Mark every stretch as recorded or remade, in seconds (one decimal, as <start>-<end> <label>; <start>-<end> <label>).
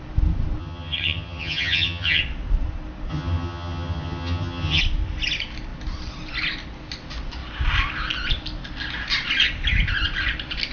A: 0.0-0.6 recorded; 0.6-2.2 remade; 2.2-3.1 recorded; 3.1-4.8 remade; 4.8-10.7 recorded